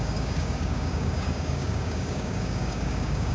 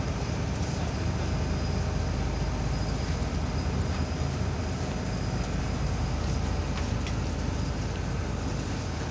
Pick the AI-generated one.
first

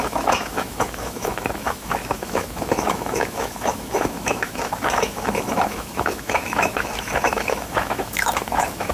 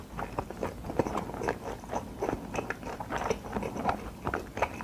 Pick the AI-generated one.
first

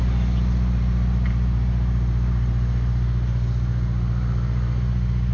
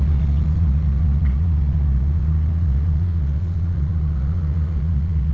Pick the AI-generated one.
second